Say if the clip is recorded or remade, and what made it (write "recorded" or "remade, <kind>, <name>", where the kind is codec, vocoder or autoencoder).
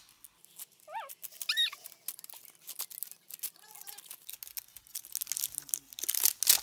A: recorded